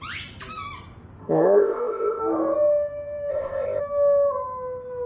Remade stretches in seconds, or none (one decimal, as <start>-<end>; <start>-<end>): 1.2-2.2; 3.3-3.8